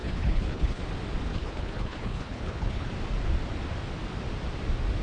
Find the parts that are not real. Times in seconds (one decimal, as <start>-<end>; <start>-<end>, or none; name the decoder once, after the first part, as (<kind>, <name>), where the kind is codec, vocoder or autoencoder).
0.0-0.8 (codec, HILCodec); 1.3-2.9